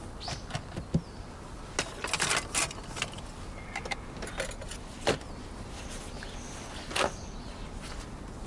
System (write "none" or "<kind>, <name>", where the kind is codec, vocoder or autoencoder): none